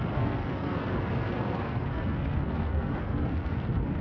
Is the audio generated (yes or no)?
yes